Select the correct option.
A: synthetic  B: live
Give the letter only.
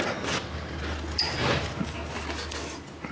B